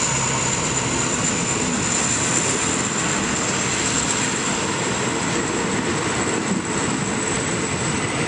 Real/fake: real